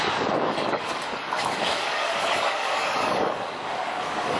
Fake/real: fake